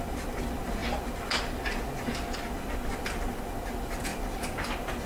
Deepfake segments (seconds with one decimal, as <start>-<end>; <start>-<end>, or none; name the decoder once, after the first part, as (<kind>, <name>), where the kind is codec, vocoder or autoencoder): none